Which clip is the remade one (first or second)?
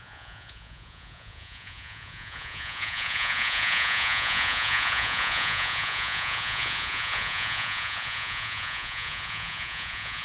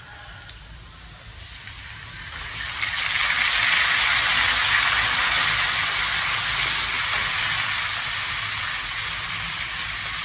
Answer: first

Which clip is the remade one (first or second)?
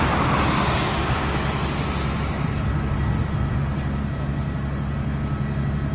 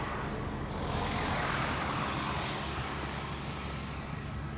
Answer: second